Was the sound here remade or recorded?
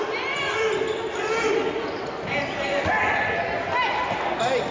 recorded